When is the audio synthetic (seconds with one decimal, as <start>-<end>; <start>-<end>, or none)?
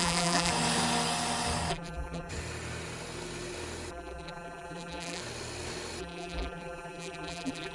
0.0-0.5; 1.7-2.3; 3.9-5.2; 6.0-7.7